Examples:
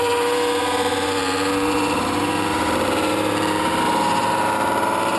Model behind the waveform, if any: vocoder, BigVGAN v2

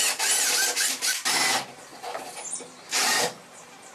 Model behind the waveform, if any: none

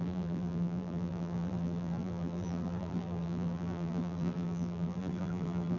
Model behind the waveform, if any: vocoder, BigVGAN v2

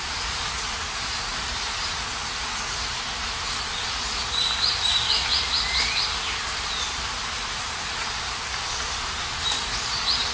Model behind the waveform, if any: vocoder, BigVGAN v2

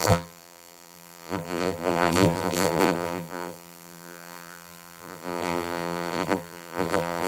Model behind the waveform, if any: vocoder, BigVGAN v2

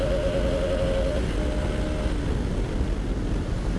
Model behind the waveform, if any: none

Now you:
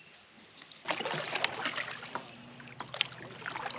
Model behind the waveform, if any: none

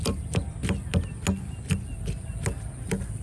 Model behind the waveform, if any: none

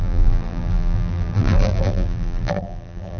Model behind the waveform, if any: vocoder, BigVGAN v2